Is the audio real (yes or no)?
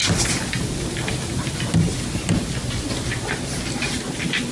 yes